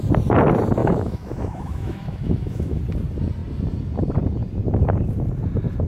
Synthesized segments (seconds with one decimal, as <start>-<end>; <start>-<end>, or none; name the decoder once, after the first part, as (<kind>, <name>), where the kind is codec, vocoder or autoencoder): 0.8-2.8 (autoencoder, DAC-VAE)